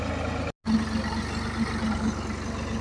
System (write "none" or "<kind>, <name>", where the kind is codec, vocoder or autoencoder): none